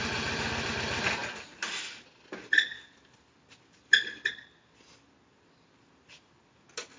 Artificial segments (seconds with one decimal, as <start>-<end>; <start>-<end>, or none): none